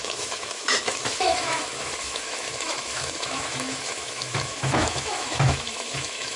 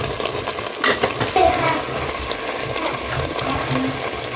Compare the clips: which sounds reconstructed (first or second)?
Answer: first